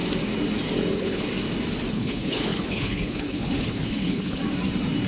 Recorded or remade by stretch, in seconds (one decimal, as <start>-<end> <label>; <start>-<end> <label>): 0.0-0.9 recorded; 0.9-1.3 remade; 1.3-1.9 recorded; 1.9-4.4 remade; 4.4-5.1 recorded

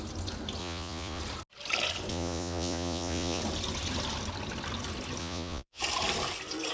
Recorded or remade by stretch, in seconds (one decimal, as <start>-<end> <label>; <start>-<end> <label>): 0.0-0.6 recorded; 0.6-1.2 remade; 1.2-2.1 recorded; 2.1-3.4 remade; 3.4-5.2 recorded; 5.2-5.8 remade; 5.8-6.7 recorded

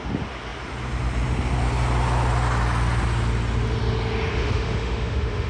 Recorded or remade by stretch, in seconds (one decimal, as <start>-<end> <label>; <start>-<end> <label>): 0.0-4.3 recorded; 4.3-5.5 remade

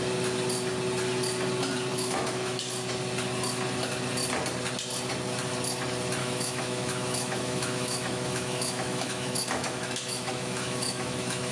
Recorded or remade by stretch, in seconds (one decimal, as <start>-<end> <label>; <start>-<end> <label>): 0.0-1.9 recorded; 1.9-2.6 remade; 2.6-6.2 recorded; 6.2-11.5 remade

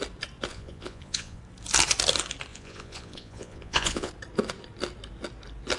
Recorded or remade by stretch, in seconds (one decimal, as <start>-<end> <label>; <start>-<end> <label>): 0.0-0.5 recorded; 0.5-1.4 remade; 1.4-2.5 recorded; 2.5-4.1 remade; 4.1-5.8 recorded

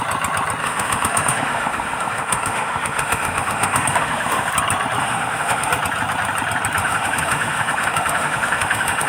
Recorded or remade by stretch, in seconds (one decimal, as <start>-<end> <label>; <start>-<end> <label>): 0.0-0.6 recorded; 0.6-4.5 remade; 4.5-5.0 recorded; 5.0-5.7 remade; 5.7-6.8 recorded; 6.8-9.1 remade